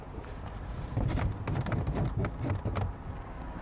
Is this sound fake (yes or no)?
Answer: no